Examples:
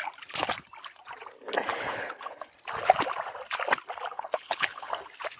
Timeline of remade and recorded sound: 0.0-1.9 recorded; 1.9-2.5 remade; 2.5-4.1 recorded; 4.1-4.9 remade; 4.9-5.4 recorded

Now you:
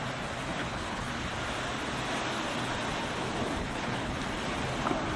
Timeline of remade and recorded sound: 0.0-0.6 recorded; 0.6-1.3 remade; 1.3-3.6 recorded; 3.6-4.2 remade; 4.2-5.2 recorded

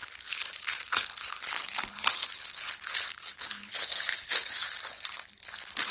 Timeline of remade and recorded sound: 0.0-5.9 remade

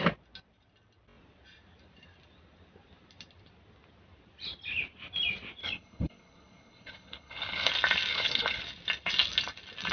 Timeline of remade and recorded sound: 0.0-5.6 recorded; 5.6-7.7 remade; 7.7-8.1 recorded; 8.1-8.6 remade; 8.6-9.9 recorded

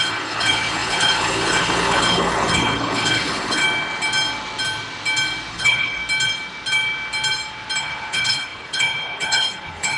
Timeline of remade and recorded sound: 0.0-3.6 remade; 3.6-5.5 recorded; 5.5-6.0 remade; 6.0-7.8 recorded; 7.8-10.0 remade

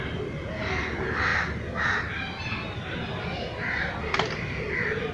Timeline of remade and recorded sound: 0.0-5.1 recorded

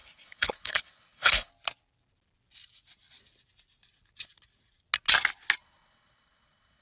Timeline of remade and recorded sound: 0.0-1.5 remade; 1.5-5.6 recorded; 5.6-6.8 remade